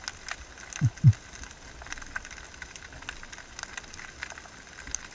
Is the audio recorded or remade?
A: recorded